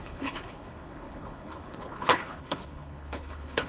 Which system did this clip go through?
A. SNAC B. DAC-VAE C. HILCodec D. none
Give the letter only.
C